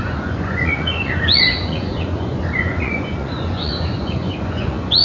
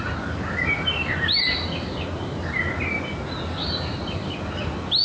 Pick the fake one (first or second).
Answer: first